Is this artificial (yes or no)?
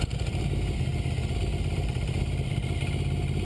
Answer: yes